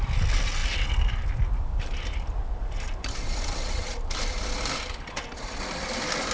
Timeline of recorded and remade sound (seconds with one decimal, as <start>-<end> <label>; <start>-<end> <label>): 0.0-6.3 recorded